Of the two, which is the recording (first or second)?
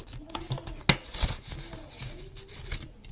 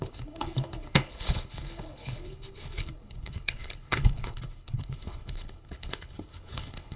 first